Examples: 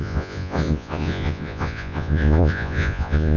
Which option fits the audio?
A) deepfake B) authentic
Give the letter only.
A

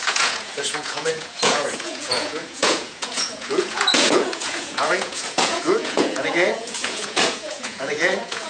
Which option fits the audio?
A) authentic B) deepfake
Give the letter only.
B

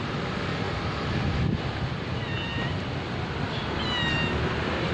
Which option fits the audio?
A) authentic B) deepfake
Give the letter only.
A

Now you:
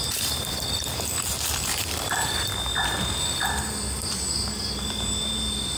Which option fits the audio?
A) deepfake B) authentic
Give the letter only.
B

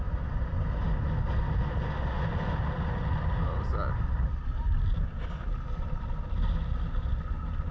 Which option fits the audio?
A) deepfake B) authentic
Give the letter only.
B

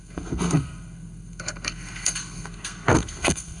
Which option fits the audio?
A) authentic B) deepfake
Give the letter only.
B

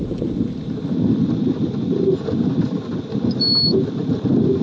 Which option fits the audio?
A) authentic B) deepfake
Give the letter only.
A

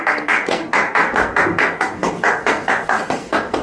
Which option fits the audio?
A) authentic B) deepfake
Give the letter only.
B